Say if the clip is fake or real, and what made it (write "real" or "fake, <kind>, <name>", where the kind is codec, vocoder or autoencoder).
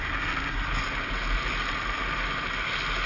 real